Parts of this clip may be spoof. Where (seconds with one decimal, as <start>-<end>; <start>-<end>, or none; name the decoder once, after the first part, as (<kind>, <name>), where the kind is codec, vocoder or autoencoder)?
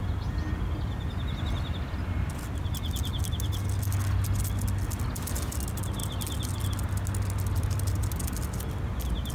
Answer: none